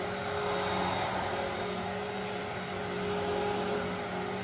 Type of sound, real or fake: real